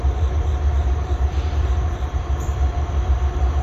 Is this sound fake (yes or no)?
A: yes